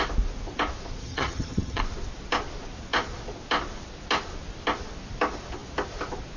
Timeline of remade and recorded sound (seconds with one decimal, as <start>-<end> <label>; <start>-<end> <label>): 0.0-1.0 recorded; 1.0-1.8 remade; 1.8-6.4 recorded